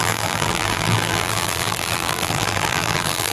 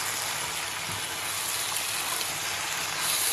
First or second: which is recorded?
second